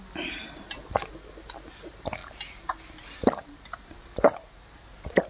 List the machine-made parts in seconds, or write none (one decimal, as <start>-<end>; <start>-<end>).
2.2-5.3